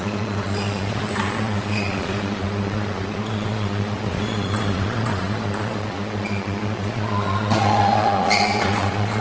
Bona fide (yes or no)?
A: no